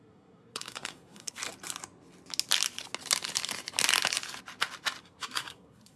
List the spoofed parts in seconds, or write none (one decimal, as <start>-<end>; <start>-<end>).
0.0-1.4; 5.0-6.0